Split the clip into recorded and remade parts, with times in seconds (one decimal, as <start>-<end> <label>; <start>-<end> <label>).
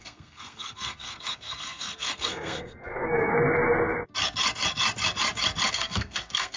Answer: 0.0-3.3 remade; 3.3-5.7 recorded; 5.7-6.6 remade